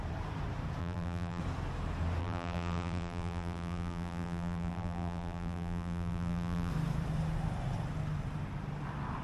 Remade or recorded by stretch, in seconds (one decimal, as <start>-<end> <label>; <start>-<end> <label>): 0.0-0.8 recorded; 0.8-1.4 remade; 1.4-2.2 recorded; 2.2-6.7 remade; 6.7-9.2 recorded